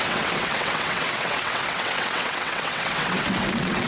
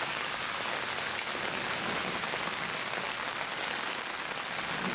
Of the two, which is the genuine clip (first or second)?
second